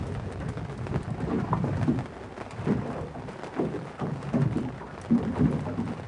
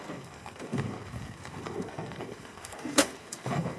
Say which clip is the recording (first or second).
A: first